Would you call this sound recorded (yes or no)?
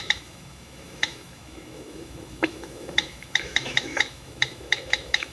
no